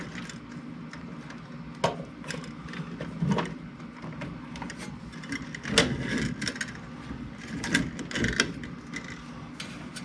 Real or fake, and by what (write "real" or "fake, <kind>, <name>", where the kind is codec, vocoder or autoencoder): real